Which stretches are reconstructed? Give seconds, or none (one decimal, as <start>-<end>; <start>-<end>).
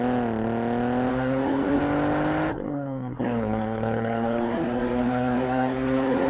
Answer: 1.1-1.8; 2.5-6.3